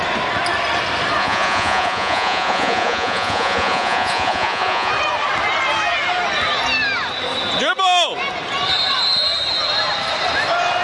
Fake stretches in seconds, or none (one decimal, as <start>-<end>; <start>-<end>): 1.2-4.9